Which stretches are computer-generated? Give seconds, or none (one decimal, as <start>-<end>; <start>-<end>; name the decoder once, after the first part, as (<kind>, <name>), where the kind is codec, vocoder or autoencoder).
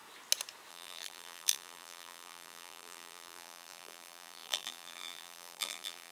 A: 0.7-6.1 (vocoder, BigVGAN v2)